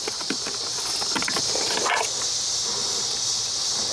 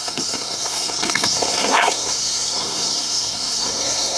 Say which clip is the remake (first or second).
second